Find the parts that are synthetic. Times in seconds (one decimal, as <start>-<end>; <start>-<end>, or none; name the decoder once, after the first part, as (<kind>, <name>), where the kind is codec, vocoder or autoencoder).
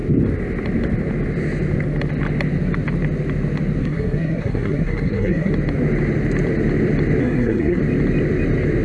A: 3.8-5.5 (codec, SNAC); 7.2-7.8